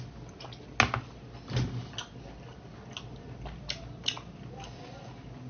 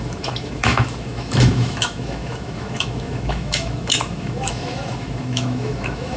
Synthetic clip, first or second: second